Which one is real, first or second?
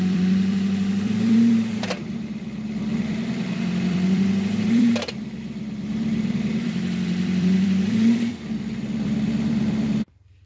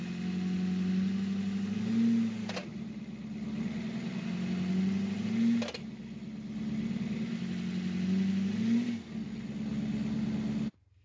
second